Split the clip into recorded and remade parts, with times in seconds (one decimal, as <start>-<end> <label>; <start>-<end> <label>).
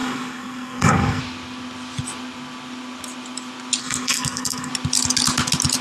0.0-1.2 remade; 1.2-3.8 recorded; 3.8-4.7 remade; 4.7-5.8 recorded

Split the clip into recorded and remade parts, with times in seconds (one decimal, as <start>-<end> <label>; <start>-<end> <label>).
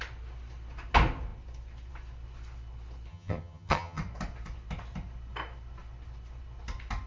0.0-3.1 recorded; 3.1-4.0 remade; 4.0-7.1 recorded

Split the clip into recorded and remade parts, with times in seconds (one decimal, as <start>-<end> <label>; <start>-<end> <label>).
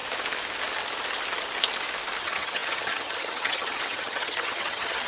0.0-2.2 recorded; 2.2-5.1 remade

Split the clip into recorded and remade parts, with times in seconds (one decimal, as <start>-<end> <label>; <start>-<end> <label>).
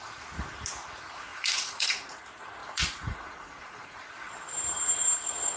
0.0-1.3 recorded; 1.3-2.1 remade; 2.1-2.6 recorded; 2.6-4.1 remade; 4.1-5.6 recorded